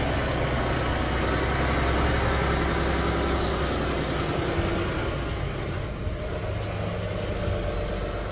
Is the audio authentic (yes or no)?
yes